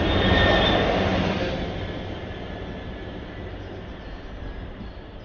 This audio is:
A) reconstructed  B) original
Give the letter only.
B